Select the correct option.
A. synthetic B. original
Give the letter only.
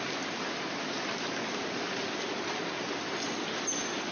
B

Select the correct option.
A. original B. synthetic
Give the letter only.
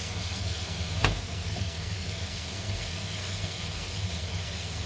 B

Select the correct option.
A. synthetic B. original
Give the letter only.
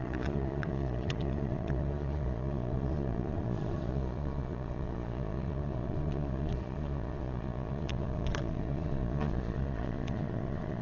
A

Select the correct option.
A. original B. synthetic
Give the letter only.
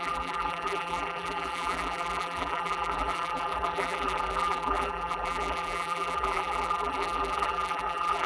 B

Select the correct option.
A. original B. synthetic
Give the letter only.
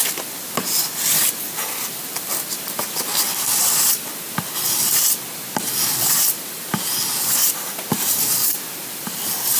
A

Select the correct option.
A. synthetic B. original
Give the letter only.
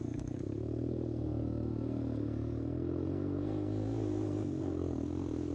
A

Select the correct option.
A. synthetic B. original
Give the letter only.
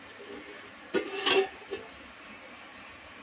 B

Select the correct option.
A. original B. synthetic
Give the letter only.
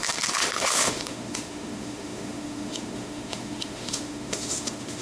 B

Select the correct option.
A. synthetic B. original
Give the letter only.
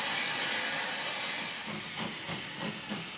B